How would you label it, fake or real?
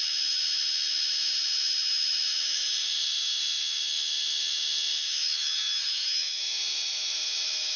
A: fake